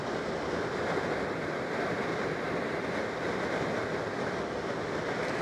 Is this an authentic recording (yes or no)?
yes